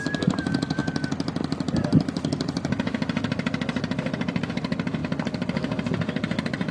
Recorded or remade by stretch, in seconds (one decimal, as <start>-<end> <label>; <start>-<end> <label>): 0.0-0.8 remade; 0.8-4.5 recorded; 4.5-6.7 remade